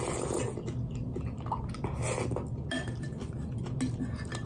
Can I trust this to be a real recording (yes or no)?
yes